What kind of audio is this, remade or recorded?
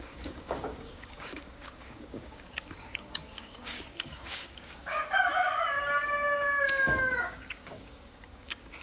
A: remade